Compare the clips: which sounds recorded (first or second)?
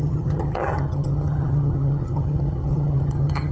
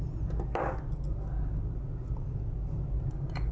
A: second